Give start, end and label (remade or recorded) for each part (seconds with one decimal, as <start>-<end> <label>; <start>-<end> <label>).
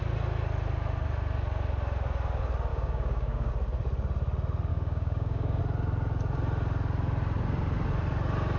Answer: 0.0-2.7 recorded; 2.7-3.5 remade; 3.5-4.7 recorded; 4.7-5.6 remade; 5.6-8.6 recorded